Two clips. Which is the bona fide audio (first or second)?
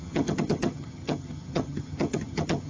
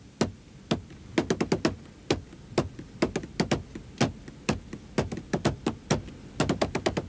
second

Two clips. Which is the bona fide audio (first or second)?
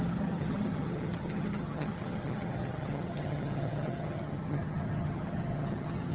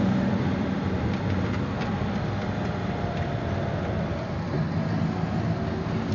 second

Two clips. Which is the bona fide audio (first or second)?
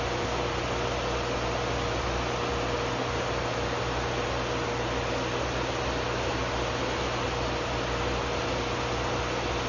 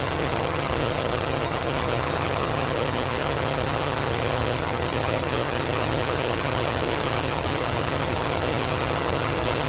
first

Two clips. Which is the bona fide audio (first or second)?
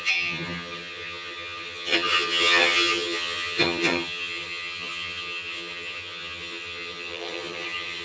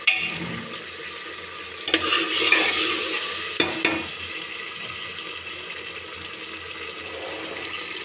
second